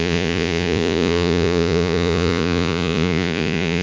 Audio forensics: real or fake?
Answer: fake